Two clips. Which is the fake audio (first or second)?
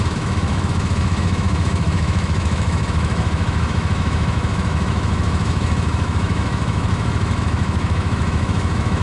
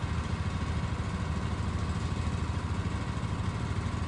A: first